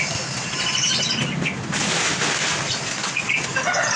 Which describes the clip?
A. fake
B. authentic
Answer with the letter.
B